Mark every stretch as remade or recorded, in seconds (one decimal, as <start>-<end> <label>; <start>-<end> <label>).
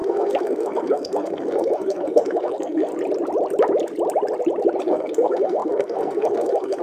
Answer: 0.0-2.9 remade; 2.9-4.8 recorded; 4.8-6.8 remade